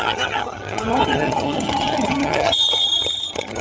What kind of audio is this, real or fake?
fake